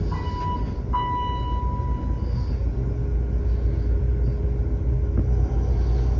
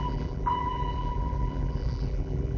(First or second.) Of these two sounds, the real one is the first